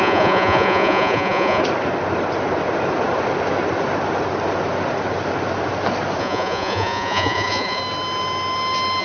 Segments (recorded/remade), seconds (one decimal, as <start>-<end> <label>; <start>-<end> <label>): 0.0-1.6 remade; 1.6-6.2 recorded; 6.2-7.8 remade; 7.8-9.0 recorded